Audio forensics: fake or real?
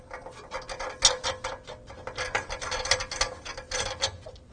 real